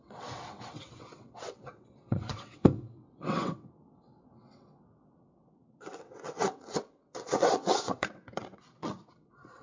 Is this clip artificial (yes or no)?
yes